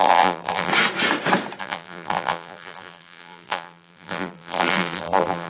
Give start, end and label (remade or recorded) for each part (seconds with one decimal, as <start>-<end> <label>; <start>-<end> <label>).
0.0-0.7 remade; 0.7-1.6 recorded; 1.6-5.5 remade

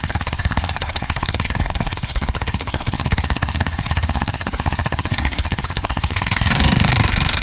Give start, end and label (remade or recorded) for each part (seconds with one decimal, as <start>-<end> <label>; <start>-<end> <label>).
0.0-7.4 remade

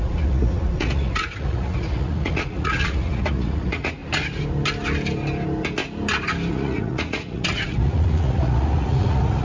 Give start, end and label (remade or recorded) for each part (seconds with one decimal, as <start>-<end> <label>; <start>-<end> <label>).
0.0-4.0 remade; 4.0-6.5 recorded; 6.5-9.4 remade

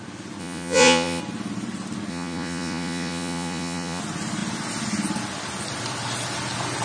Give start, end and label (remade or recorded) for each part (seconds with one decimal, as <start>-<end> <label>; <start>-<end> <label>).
0.0-0.4 recorded; 0.4-1.2 remade; 1.2-2.1 recorded; 2.1-4.0 remade; 4.0-6.8 recorded

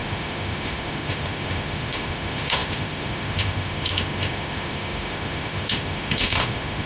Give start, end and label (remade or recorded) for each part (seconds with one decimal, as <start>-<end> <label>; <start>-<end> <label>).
0.0-6.9 remade